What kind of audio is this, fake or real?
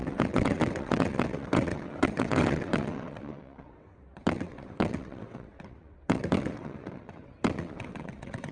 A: fake